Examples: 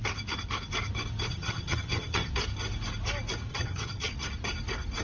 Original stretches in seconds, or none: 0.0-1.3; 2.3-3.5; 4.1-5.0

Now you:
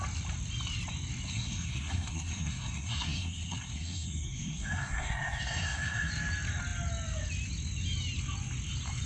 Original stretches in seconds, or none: 0.0-1.3; 6.1-9.1